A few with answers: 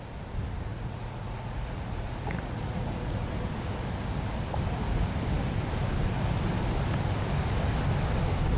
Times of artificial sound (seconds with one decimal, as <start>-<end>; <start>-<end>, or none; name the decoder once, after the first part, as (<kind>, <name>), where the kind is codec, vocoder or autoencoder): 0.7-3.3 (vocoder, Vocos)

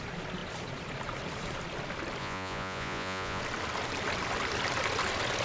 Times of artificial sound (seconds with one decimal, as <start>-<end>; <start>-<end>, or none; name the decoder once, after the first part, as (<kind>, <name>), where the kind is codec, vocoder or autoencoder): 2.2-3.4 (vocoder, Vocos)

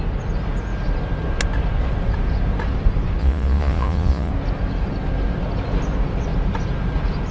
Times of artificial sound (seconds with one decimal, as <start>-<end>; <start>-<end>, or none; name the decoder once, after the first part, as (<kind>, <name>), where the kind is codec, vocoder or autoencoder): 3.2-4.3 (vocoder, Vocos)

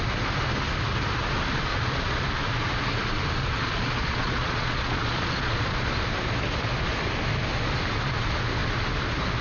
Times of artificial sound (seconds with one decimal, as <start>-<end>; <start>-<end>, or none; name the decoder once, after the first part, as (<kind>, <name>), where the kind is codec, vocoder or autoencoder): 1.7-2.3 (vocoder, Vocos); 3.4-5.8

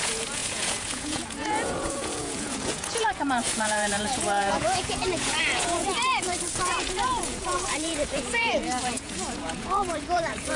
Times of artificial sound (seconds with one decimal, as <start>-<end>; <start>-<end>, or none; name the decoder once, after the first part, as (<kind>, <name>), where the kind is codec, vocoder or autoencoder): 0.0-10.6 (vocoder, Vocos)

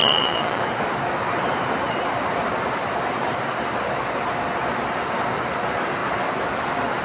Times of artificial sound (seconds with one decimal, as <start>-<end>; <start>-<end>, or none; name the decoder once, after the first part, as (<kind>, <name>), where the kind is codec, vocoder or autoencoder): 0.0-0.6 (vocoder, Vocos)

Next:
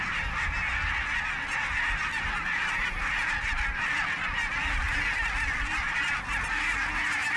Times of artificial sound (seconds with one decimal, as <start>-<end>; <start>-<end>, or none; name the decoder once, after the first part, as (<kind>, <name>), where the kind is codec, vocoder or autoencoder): none